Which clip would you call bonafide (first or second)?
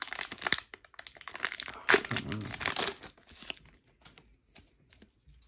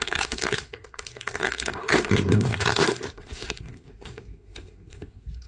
first